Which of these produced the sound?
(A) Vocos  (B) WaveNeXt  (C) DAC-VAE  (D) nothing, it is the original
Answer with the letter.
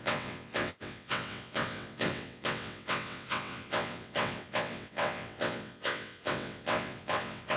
B